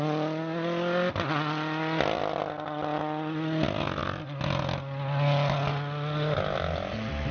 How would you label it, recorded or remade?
recorded